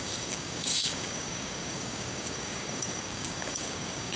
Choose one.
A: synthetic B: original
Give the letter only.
A